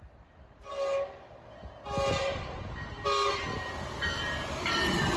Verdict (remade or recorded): recorded